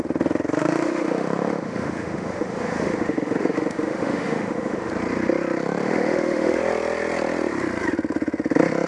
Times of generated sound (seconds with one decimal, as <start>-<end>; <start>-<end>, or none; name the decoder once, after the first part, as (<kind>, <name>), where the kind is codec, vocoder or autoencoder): 0.6-4.9 (autoencoder, DAC-VAE); 5.8-6.6